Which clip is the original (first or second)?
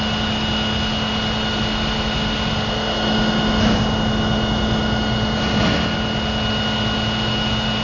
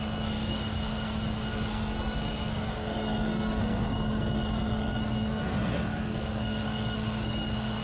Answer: first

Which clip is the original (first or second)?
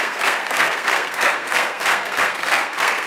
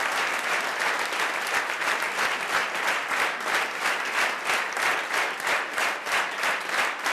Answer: second